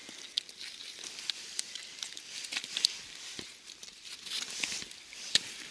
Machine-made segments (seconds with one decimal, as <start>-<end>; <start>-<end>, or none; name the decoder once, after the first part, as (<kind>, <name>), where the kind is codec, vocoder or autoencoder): 1.3-1.8 (vocoder, BigVGAN v2); 5.2-5.7